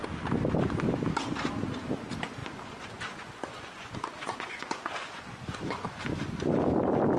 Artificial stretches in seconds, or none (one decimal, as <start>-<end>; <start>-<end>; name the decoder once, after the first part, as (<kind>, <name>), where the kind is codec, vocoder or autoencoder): 2.4-6.0 (vocoder, Vocos)